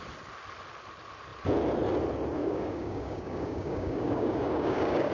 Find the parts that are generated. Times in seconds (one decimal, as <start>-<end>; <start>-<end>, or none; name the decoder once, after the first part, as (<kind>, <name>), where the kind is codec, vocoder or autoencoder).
2.4-5.1 (codec, DAC)